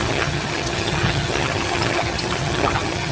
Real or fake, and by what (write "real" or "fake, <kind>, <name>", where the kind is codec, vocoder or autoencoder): fake, vocoder, HiFi-GAN